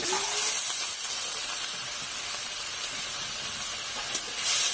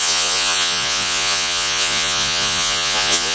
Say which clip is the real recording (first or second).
first